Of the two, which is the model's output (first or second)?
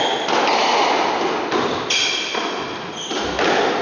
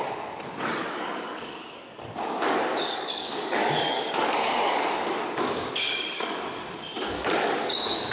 second